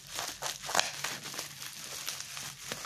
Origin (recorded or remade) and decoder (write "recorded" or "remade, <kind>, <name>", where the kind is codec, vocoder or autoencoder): recorded